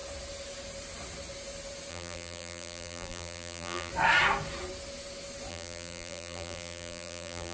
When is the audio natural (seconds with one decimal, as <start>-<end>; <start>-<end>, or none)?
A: 0.0-1.9; 3.9-5.5